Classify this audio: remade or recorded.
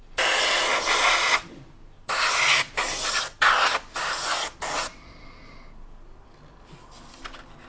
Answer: recorded